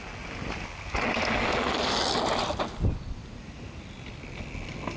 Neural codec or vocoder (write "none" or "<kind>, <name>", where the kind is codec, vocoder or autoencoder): none